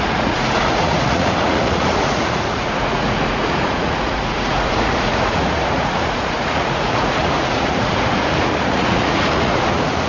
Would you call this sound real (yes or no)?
no